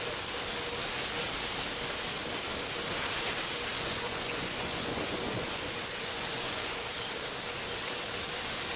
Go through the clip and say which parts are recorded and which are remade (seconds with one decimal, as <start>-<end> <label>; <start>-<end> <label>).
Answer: 0.0-3.7 recorded; 3.7-6.8 remade; 6.8-8.8 recorded